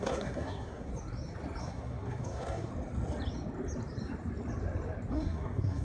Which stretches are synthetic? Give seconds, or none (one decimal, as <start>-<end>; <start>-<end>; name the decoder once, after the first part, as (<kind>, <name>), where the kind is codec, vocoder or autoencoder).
0.0-0.9 (codec, SNAC); 1.6-2.7; 5.1-5.8